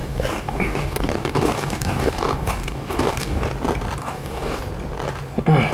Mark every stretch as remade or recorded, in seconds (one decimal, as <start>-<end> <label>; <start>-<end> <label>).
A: 0.0-3.4 remade; 3.4-4.0 recorded; 4.0-4.6 remade; 4.6-5.7 recorded